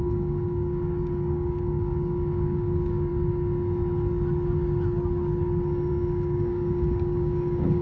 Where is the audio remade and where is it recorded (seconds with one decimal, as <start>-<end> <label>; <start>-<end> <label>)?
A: 0.0-3.1 remade; 3.1-5.9 recorded; 5.9-7.8 remade